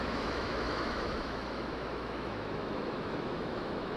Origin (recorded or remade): remade